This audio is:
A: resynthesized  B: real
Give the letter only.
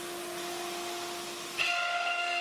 B